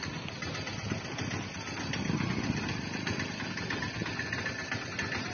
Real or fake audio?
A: real